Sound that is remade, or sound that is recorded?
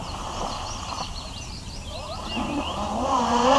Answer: recorded